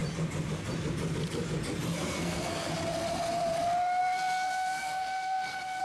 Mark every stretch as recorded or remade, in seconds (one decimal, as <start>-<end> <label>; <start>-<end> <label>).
0.0-1.9 recorded; 1.9-2.7 remade; 2.7-4.0 recorded; 4.0-5.8 remade